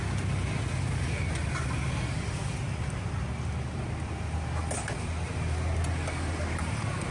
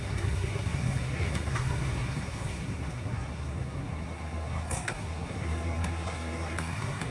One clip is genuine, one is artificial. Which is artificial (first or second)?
second